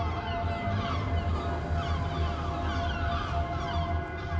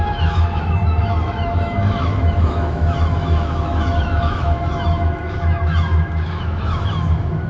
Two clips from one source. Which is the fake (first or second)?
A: second